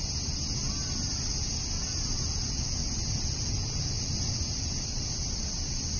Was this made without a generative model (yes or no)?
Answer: yes